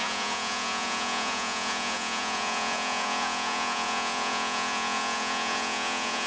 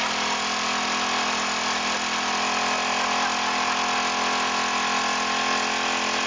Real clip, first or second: second